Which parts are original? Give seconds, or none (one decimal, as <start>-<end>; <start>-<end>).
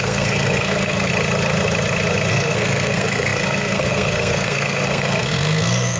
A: 1.1-2.3